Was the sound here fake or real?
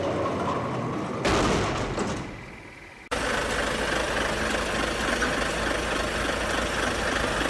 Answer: real